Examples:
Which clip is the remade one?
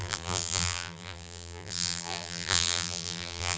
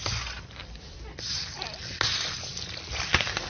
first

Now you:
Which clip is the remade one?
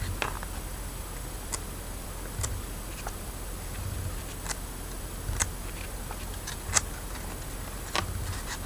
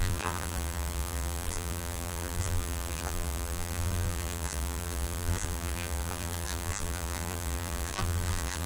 second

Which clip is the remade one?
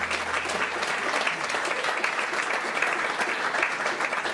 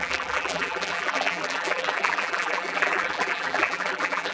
second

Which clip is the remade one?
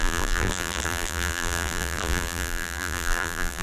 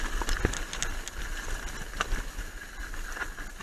first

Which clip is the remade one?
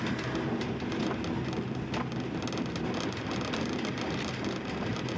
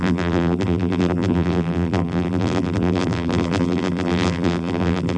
second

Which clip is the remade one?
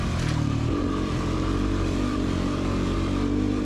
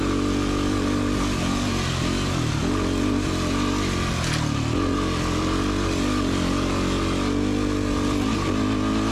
first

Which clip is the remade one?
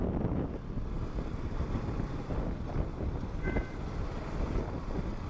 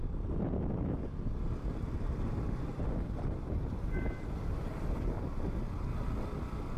first